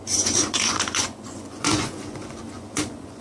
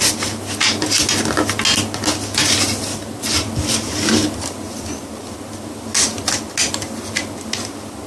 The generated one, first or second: first